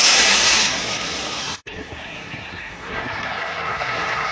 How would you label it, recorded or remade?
remade